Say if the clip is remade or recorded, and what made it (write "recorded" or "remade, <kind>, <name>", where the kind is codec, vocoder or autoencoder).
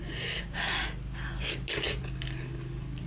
recorded